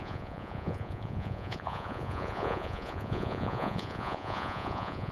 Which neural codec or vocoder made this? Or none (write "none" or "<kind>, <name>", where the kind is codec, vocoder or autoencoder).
vocoder, Vocos